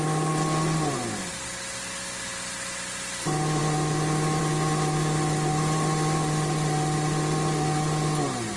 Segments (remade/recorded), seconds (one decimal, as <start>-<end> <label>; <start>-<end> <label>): 0.0-8.6 recorded